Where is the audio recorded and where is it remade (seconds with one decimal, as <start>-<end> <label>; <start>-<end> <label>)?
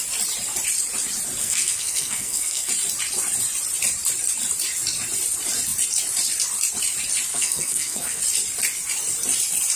0.0-1.4 recorded; 1.4-2.7 remade; 2.7-7.3 recorded; 7.3-8.2 remade; 8.2-9.8 recorded